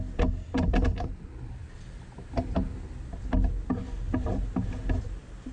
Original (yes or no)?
no